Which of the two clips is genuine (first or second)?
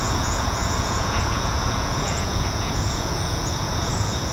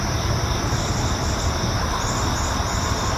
second